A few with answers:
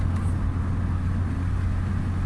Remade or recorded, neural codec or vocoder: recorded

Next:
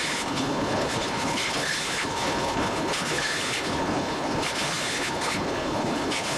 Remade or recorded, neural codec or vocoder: remade, codec, HILCodec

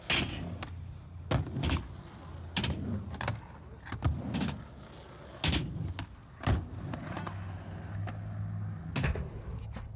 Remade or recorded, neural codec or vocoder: recorded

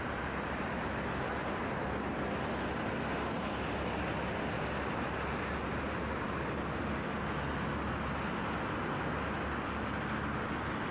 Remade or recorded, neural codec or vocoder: recorded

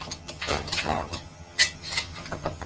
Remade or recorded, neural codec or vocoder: remade, vocoder, HiFi-GAN